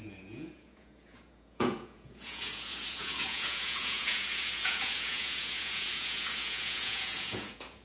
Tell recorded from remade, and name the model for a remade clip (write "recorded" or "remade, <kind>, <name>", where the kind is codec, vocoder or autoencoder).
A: remade, vocoder, Vocos